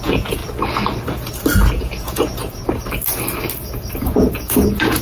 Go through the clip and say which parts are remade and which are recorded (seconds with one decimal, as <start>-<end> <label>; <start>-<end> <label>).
0.0-0.4 remade; 0.4-1.7 recorded; 1.7-2.6 remade; 2.6-3.9 recorded; 3.9-5.0 remade